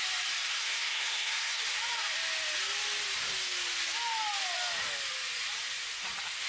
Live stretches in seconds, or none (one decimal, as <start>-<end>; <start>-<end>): 0.0-0.6; 1.6-6.5